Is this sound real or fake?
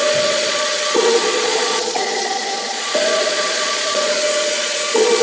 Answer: fake